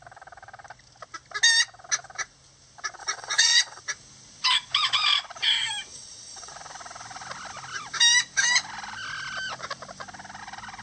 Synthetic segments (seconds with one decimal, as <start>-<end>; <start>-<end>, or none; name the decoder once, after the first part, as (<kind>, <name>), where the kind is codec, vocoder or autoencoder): 3.0-3.8 (vocoder, WaveNeXt); 5.9-6.5